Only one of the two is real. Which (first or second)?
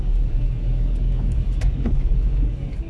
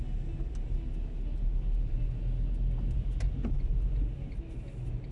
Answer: second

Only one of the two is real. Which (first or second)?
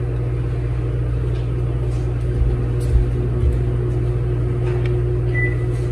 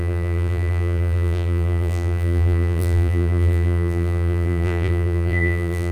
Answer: first